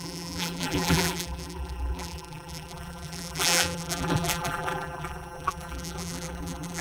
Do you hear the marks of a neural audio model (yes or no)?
yes